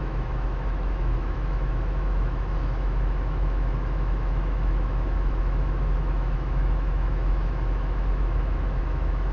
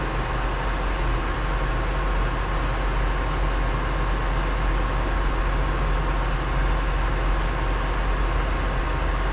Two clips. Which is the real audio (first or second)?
second